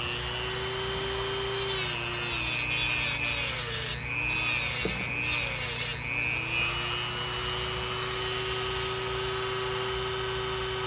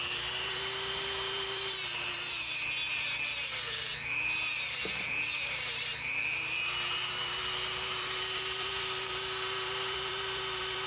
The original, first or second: first